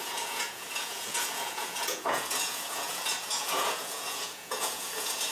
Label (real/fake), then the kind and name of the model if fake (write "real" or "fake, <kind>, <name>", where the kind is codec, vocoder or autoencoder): fake, vocoder, Vocos